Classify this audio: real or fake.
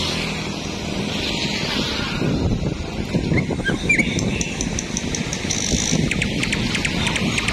real